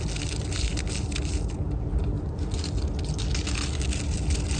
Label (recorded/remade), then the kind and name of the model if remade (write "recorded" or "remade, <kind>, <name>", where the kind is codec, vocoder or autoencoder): recorded